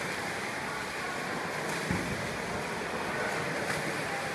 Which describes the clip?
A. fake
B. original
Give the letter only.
B